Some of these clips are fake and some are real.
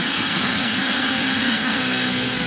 fake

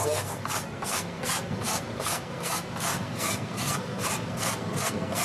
fake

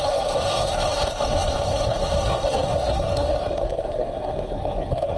fake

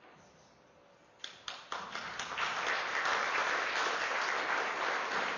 real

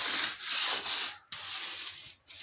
real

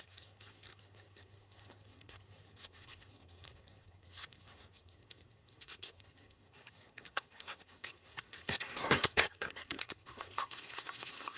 fake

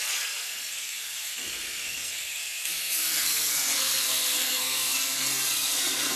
fake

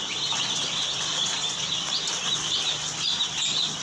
real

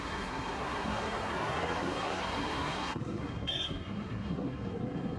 fake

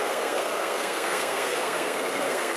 fake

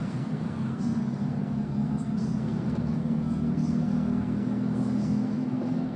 fake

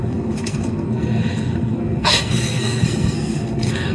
fake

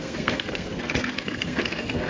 fake